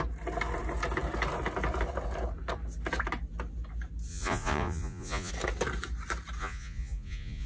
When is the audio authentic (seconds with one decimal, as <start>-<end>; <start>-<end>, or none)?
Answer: 0.0-4.1; 5.3-6.4